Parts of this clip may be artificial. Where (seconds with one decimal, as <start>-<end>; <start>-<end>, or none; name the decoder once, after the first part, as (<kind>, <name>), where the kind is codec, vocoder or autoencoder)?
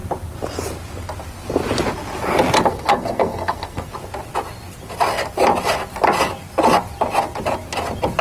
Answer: 2.7-3.9 (codec, SNAC)